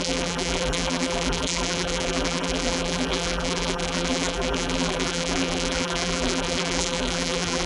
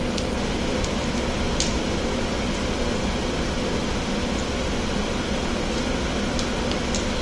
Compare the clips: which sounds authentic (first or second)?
second